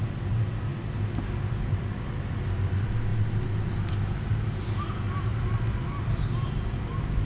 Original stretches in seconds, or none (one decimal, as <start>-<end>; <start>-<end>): 0.0-7.3